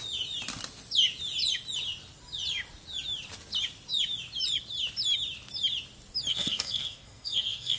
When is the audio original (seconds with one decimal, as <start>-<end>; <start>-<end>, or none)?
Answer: 0.0-6.3